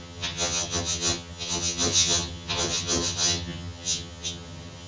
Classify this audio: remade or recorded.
remade